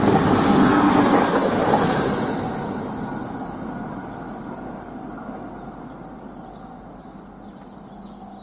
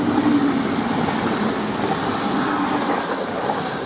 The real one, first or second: first